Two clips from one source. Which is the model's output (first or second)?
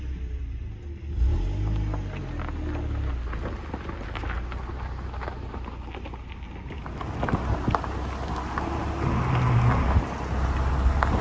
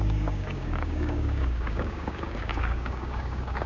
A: second